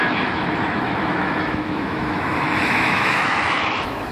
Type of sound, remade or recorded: remade